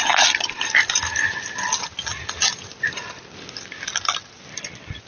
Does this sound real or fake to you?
real